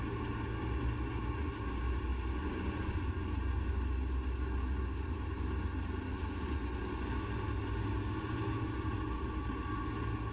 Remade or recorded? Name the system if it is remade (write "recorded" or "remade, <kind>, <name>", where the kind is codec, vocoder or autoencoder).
recorded